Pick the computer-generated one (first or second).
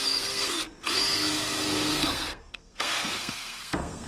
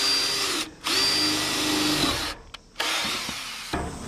first